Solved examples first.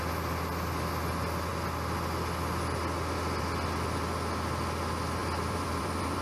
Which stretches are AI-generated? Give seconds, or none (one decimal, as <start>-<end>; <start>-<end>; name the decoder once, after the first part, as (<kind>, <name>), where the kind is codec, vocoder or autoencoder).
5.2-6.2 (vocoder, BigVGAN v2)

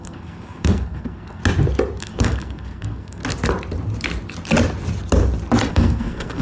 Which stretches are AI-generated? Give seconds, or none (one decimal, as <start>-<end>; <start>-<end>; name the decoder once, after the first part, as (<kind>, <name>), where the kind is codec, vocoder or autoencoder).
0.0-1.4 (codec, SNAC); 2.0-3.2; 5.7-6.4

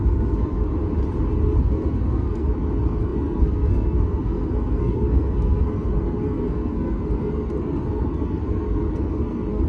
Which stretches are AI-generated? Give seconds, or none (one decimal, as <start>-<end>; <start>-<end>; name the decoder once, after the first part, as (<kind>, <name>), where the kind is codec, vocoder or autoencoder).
0.0-0.7 (codec, SNAC); 1.6-9.7